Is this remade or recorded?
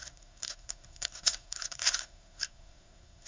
remade